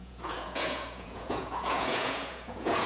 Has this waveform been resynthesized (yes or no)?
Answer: yes